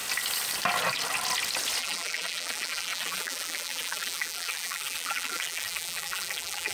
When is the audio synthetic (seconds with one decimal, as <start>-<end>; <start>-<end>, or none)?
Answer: 1.8-6.7

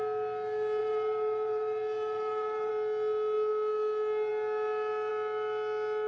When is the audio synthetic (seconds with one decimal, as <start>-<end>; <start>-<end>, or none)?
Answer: 0.8-2.7

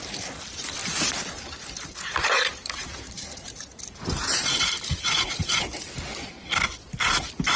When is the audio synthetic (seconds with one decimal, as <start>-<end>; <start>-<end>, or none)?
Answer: 0.8-5.4

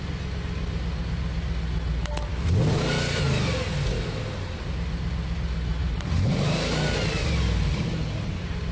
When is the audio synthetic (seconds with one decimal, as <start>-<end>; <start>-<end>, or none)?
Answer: 5.8-6.8

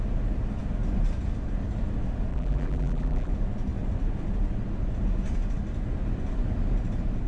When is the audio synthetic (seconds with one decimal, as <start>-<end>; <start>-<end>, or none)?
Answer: 2.3-3.3